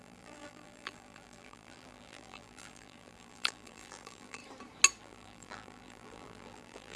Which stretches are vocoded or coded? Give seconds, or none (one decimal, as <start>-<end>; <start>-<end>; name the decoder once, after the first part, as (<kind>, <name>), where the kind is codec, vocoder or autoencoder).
0.0-4.4 (vocoder, BigVGAN v2); 5.0-7.0